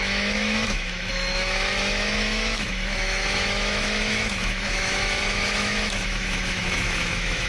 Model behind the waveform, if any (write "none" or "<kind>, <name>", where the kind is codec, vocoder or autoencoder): autoencoder, DAC-VAE